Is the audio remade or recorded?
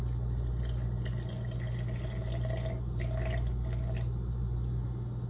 recorded